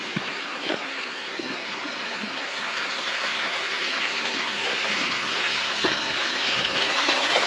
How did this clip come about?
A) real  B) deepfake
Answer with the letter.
B